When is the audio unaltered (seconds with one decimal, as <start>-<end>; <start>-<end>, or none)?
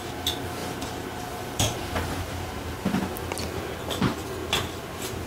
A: 0.0-0.6; 3.1-4.4